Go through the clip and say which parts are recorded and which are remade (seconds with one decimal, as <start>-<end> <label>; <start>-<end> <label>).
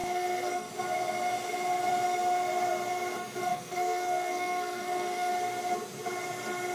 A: 0.0-0.7 remade; 0.7-3.4 recorded; 3.4-5.3 remade; 5.3-6.7 recorded